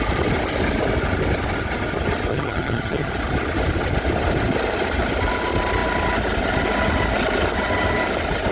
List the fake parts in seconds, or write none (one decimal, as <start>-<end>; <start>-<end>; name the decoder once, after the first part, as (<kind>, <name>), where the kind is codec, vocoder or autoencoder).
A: 2.3-3.1 (vocoder, HiFi-GAN)